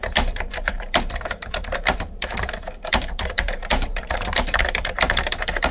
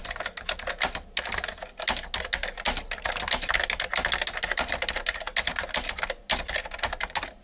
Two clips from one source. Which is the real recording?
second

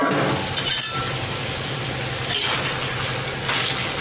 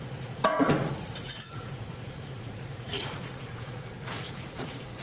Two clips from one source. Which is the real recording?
first